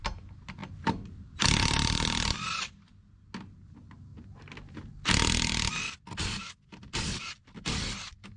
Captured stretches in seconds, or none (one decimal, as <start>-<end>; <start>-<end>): 0.0-8.4

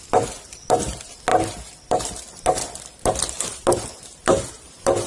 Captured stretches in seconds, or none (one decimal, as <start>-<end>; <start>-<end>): 0.0-5.1

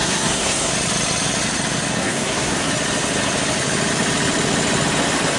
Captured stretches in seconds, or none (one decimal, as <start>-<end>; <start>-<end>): 0.7-2.0; 2.7-5.4

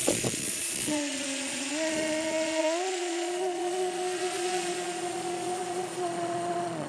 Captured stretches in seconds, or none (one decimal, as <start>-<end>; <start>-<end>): none

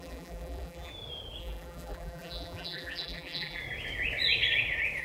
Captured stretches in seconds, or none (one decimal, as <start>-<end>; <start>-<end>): 0.9-1.4; 3.6-5.0